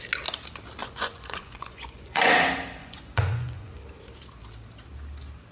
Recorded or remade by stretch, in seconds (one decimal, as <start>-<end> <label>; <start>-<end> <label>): 0.0-0.8 recorded; 0.8-2.3 remade; 2.3-2.8 recorded; 2.8-3.8 remade; 3.8-5.5 recorded